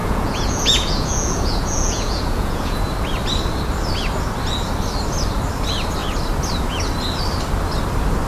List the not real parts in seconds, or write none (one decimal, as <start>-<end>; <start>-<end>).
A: 0.0-2.9